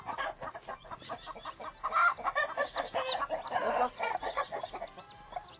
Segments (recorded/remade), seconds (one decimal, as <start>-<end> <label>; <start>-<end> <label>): 0.0-0.4 recorded; 0.4-1.1 remade; 1.1-3.8 recorded; 3.8-4.4 remade; 4.4-5.6 recorded